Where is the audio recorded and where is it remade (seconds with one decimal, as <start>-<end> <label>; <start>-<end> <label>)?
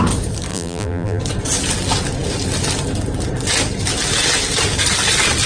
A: 0.0-0.5 recorded; 0.5-1.2 remade; 1.2-5.5 recorded